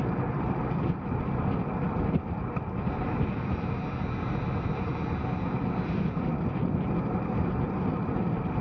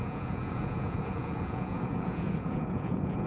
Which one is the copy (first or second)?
second